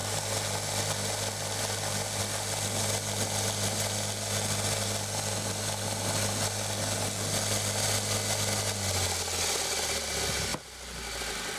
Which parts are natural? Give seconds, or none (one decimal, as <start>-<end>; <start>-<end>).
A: 0.0-11.6